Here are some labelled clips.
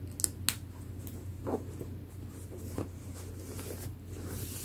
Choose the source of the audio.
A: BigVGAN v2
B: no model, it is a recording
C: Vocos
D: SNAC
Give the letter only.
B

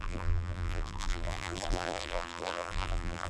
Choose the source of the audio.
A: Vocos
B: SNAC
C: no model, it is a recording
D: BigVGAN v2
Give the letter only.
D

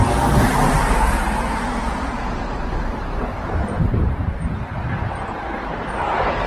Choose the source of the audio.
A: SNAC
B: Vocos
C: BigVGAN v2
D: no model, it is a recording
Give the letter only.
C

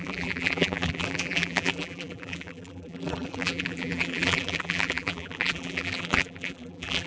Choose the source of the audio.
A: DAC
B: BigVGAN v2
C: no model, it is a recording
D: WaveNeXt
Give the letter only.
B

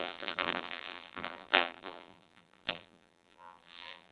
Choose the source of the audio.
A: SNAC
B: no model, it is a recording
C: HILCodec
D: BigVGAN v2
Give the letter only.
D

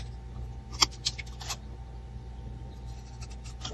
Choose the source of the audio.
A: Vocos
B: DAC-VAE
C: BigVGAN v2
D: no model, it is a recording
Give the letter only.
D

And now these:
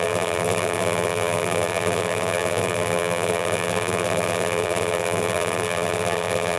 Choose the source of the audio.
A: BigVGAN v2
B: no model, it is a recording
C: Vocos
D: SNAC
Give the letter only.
A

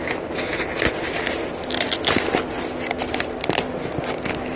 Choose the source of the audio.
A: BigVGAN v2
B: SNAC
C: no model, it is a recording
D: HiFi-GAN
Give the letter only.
C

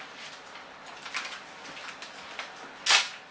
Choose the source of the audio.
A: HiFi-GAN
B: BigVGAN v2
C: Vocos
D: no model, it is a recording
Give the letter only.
D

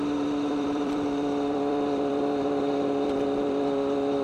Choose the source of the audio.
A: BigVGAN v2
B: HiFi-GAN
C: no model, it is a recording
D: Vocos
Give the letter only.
A